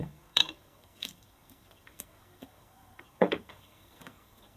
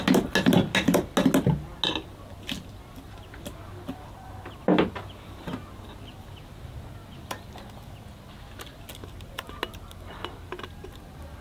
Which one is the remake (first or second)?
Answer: first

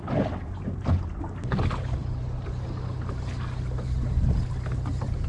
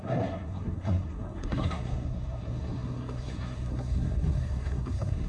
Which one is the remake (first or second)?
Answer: second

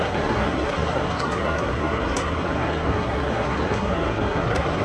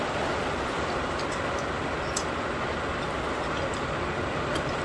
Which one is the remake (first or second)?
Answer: first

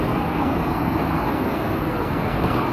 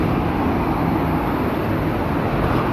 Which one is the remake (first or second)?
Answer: first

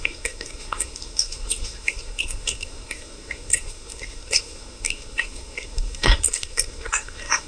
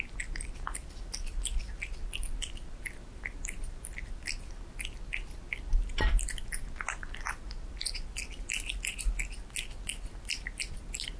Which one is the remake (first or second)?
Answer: first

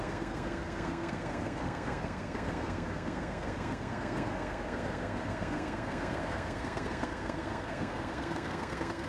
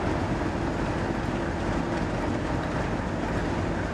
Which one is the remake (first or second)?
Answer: first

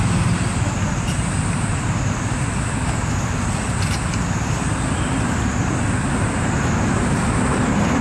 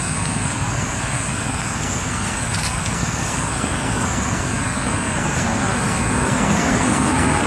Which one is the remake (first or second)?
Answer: second